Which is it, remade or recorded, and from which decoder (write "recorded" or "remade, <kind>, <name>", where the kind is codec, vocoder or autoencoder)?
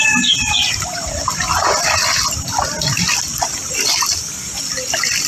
recorded